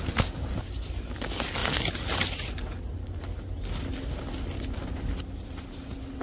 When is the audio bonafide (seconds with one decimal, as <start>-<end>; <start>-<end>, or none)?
0.0-6.2